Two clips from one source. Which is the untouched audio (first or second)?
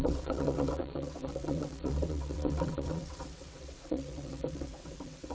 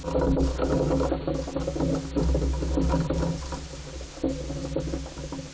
second